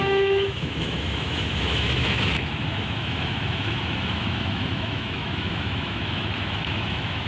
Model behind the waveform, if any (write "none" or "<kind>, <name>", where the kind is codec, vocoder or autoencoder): autoencoder, DAC-VAE